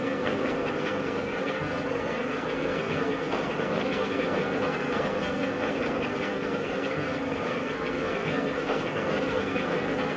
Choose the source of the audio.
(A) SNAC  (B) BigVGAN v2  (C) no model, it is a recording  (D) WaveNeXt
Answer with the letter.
A